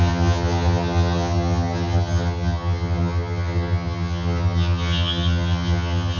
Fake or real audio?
fake